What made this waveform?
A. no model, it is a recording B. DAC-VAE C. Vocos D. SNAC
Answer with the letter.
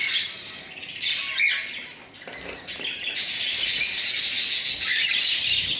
A